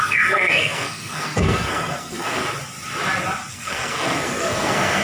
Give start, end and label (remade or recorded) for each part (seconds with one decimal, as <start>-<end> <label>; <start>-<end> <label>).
0.0-2.4 remade; 2.4-3.5 recorded; 3.5-5.0 remade